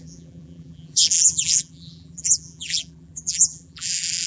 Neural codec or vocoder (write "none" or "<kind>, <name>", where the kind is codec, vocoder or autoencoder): vocoder, BigVGAN v2